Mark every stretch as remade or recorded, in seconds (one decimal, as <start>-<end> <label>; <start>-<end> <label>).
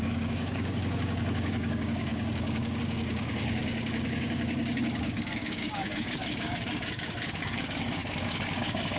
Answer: 0.0-9.0 remade